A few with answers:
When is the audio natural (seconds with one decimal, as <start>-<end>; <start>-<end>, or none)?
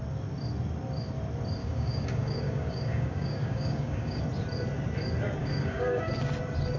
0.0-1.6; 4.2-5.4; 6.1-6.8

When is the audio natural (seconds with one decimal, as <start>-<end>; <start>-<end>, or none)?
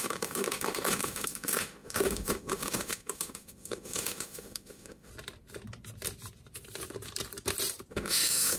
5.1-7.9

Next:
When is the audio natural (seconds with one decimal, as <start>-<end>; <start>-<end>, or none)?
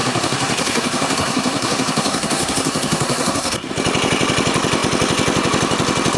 3.7-6.2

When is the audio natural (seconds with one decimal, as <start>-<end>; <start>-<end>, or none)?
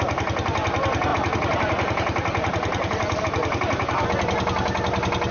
0.0-5.3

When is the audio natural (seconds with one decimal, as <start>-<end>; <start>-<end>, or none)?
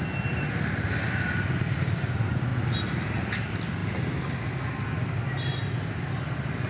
0.0-6.7